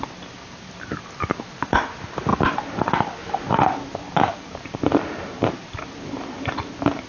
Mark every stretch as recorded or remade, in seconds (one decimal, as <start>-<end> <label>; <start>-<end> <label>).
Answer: 0.0-7.1 recorded